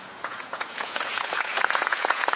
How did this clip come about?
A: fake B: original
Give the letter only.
A